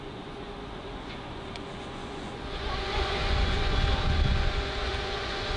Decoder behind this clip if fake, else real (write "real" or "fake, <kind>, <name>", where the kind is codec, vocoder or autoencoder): fake, vocoder, Vocos